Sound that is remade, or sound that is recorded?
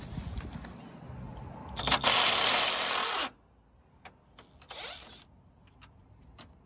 recorded